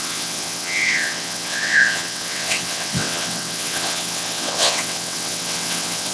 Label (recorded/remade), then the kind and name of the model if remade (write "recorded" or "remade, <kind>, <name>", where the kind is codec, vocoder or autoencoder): remade, vocoder, WaveNeXt